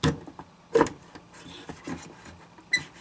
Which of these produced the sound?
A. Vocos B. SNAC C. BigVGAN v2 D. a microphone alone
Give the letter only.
D